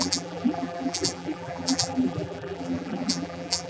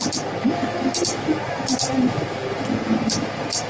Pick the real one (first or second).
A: second